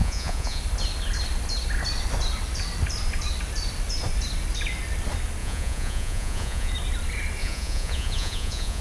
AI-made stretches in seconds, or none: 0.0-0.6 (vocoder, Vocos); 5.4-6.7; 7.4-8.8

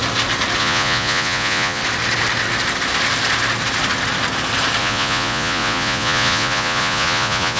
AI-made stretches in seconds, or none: 0.6-1.8 (vocoder, Vocos); 4.8-7.6

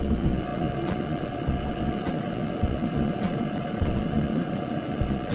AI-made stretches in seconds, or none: 0.0-5.3 (vocoder, Vocos)

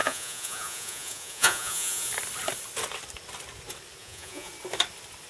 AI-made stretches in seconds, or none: 0.0-2.1 (vocoder, Vocos); 4.0-4.5

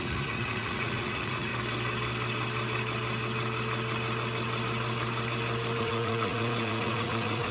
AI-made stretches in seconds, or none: 0.0-1.5 (vocoder, Vocos); 5.8-7.5

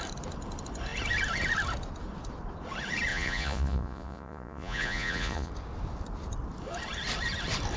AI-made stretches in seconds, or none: 3.1-5.5 (vocoder, Vocos)

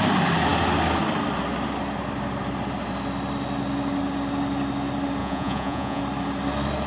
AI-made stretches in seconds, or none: 5.2-6.0 (vocoder, Vocos)

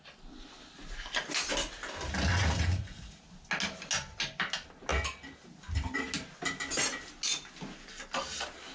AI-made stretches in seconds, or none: 2.3-3.2 (vocoder, Vocos)